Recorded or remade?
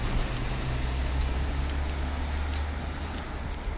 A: recorded